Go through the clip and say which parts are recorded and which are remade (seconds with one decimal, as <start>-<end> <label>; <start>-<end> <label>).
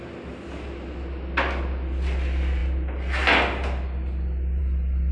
0.0-5.1 recorded